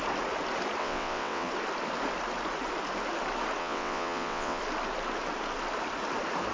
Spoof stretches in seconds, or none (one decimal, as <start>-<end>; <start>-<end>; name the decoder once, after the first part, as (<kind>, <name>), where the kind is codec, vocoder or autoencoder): 0.8-1.5 (vocoder, WaveNeXt); 3.6-4.6